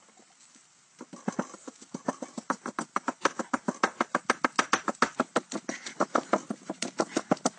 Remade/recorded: recorded